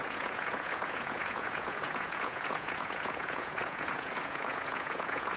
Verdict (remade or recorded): remade